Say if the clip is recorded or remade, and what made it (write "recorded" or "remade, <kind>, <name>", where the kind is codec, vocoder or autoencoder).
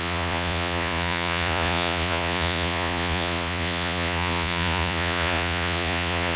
remade, vocoder, Vocos